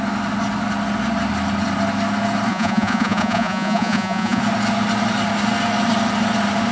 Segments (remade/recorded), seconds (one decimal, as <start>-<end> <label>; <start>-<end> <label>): 0.0-2.5 recorded; 2.5-4.4 remade; 4.4-6.7 recorded